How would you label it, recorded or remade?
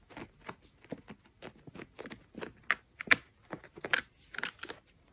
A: recorded